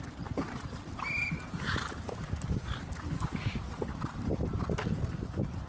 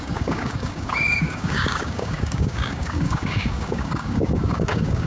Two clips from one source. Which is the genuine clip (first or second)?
first